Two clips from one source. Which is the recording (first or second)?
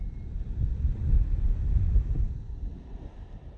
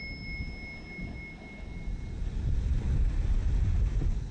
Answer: second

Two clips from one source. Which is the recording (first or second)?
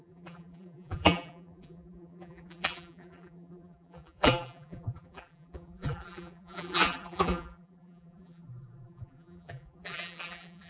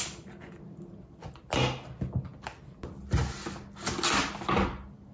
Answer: second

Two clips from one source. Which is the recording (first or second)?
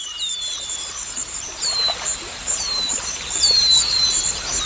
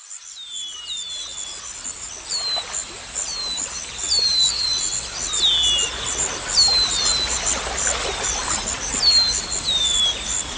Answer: second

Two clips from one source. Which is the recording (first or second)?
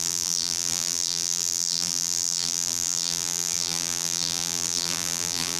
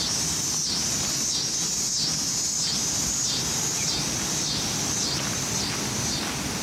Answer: second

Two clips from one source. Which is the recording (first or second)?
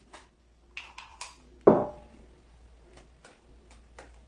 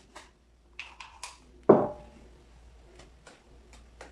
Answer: first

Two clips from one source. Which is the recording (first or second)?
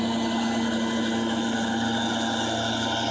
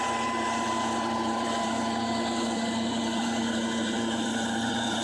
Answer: first